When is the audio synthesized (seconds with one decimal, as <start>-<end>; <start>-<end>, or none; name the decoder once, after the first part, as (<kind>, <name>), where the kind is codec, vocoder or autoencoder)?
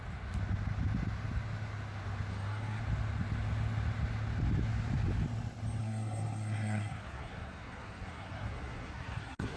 2.3-2.8 (codec, SNAC); 5.8-9.6